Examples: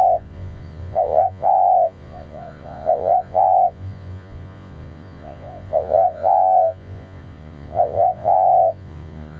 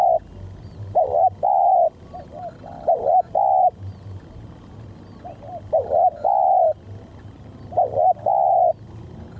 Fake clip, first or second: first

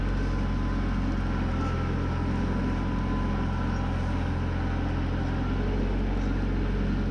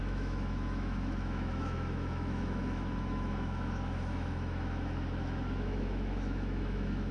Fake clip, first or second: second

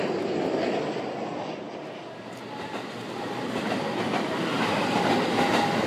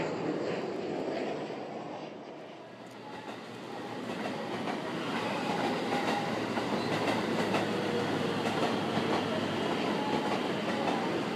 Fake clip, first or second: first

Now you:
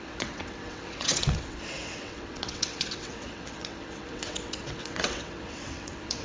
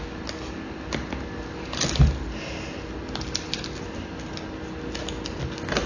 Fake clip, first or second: first